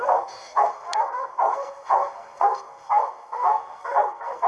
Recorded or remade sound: remade